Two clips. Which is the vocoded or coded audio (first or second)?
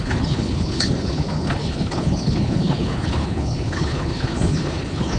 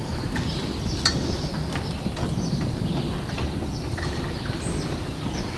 first